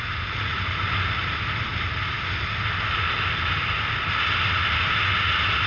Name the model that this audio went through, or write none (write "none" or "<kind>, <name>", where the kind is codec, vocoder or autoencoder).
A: none